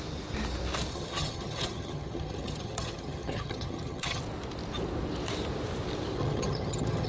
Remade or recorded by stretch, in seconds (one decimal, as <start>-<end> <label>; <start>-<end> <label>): 0.0-0.9 recorded; 0.9-4.2 remade; 4.2-6.2 recorded; 6.2-7.1 remade